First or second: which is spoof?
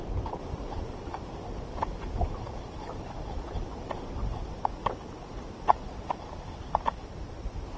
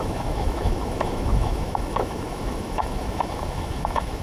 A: second